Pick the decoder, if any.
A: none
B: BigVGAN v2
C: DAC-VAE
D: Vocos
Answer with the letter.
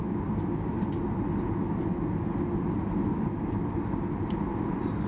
A